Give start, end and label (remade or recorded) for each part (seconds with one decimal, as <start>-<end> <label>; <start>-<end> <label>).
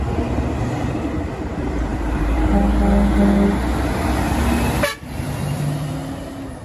0.0-1.9 recorded; 1.9-2.4 remade; 2.4-6.6 recorded